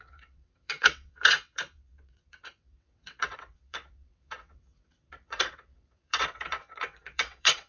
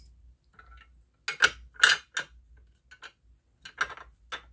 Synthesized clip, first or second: first